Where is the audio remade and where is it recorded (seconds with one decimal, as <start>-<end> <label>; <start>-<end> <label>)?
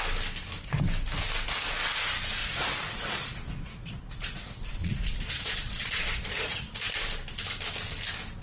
0.0-2.4 recorded; 2.4-6.8 remade; 6.8-8.4 recorded